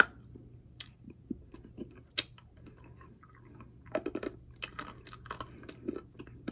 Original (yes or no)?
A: yes